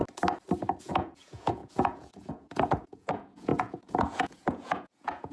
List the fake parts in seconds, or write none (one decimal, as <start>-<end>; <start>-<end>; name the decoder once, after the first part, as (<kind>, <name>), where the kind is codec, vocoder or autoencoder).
0.8-5.3 (vocoder, Vocos)